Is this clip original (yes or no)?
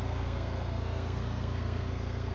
no